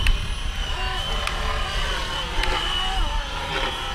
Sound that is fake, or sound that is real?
real